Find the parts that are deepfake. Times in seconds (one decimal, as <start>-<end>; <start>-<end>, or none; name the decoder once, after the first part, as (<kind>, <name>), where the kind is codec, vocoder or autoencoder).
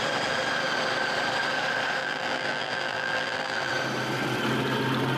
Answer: 2.0-3.7 (vocoder, BigVGAN v2)